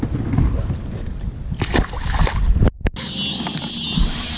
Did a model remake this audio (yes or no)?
no